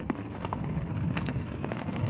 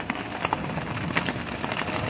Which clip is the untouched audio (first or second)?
second